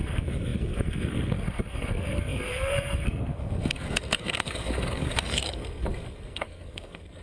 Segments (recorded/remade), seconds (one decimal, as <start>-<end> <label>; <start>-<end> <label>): 0.0-7.2 remade